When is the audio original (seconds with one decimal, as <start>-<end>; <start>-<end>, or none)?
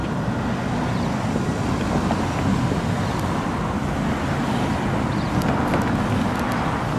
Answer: 0.0-7.0